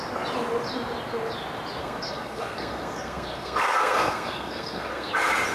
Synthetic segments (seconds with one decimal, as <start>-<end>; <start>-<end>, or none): 1.8-5.1